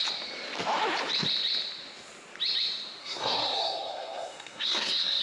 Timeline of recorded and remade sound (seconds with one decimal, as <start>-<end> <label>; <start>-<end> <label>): 0.0-3.0 recorded; 3.0-5.2 remade